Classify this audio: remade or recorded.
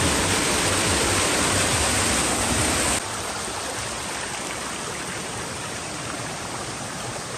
recorded